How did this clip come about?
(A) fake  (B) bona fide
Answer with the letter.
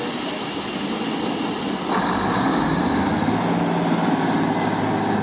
B